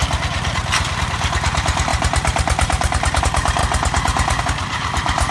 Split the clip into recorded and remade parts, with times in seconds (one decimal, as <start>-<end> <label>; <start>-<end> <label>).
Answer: 0.0-1.0 recorded; 1.0-3.6 remade; 3.6-4.4 recorded; 4.4-5.3 remade